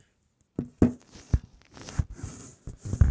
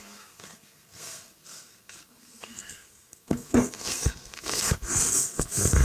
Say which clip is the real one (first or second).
first